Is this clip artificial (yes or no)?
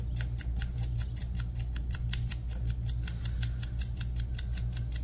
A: no